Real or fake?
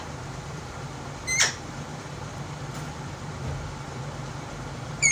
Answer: fake